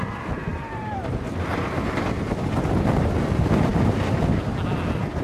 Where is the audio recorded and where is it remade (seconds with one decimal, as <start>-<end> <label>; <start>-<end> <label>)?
0.0-3.7 remade; 3.7-4.2 recorded; 4.2-5.2 remade